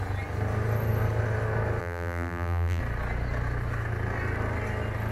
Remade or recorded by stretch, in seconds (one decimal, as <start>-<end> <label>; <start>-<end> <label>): 0.0-1.8 recorded; 1.8-2.8 remade; 2.8-5.1 recorded

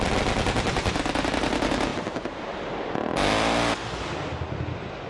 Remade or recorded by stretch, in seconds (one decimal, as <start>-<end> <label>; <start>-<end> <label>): 0.0-5.1 recorded